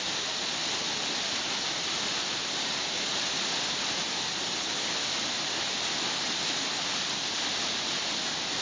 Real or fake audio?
real